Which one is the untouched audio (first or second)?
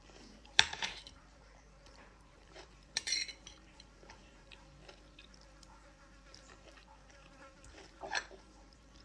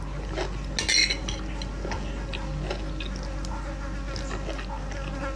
second